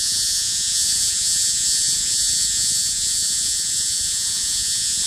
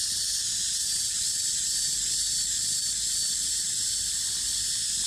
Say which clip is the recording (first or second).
second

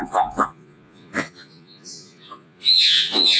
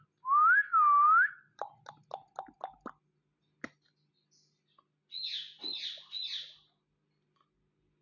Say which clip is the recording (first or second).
second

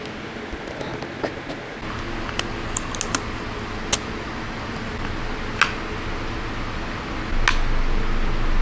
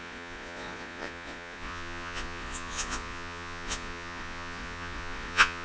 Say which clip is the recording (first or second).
first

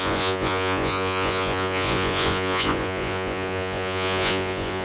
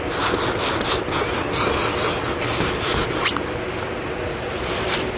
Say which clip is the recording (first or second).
second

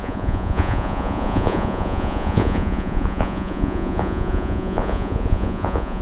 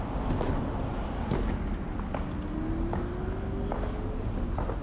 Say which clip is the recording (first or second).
second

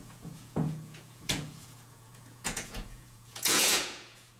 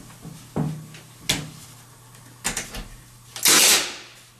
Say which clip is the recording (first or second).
second